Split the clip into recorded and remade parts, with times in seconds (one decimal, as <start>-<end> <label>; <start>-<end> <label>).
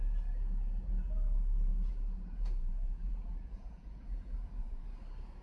0.0-1.7 recorded; 1.7-4.9 remade; 4.9-5.4 recorded